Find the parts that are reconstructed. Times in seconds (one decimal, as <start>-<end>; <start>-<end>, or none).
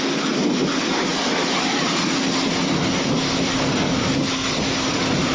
none